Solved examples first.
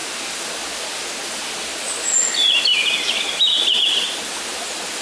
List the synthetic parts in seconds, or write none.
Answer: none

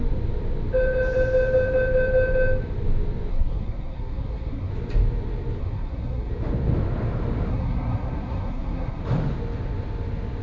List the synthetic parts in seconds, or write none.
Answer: 3.3-4.7 (codec, SNAC); 5.6-6.3; 7.5-9.0

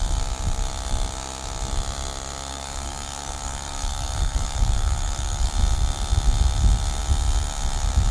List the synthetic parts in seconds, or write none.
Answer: 2.5-5.5 (codec, DAC)

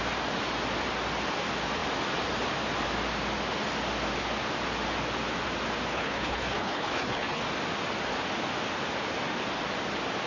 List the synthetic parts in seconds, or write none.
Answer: 5.9-7.4 (codec, HILCodec)

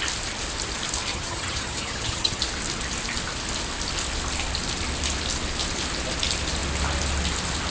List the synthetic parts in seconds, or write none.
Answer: 1.1-2.4 (vocoder, HiFi-GAN)

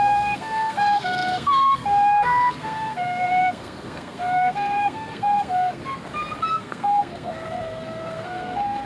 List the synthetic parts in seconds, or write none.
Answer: 0.0-5.8 (codec, SNAC); 6.5-8.9